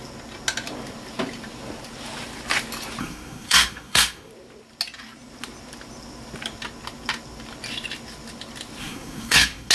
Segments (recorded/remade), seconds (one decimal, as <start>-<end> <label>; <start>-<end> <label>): 0.0-3.0 recorded; 3.0-4.3 remade; 4.3-8.8 recorded; 8.8-9.7 remade

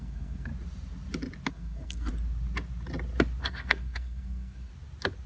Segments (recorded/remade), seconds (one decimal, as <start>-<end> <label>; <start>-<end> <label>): 0.0-0.5 remade; 0.5-1.5 recorded; 1.5-2.1 remade; 2.1-3.4 recorded; 3.4-4.7 remade; 4.7-5.3 recorded

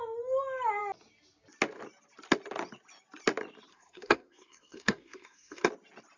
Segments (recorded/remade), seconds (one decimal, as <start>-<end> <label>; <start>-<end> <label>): 0.0-3.7 recorded; 3.7-5.7 remade; 5.7-6.2 recorded

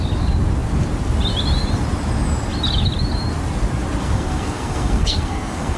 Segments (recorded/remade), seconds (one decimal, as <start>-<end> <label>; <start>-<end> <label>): 0.0-4.0 recorded; 4.0-5.8 remade

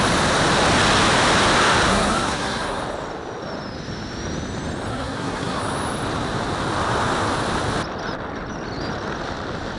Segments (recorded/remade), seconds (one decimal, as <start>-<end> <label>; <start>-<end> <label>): 0.0-1.9 recorded; 1.9-2.8 remade; 2.8-4.9 recorded; 4.9-5.6 remade; 5.6-9.8 recorded

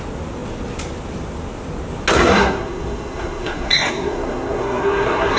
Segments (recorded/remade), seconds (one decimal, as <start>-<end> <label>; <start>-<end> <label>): 0.0-2.1 recorded; 2.1-5.4 remade

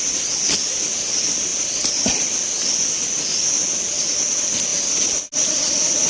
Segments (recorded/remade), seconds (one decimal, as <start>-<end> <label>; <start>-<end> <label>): 0.0-6.1 recorded

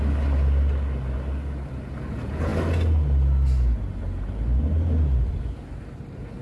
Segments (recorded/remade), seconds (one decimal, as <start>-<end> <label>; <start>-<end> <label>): 0.0-6.4 recorded